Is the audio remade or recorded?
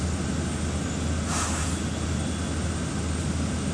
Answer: recorded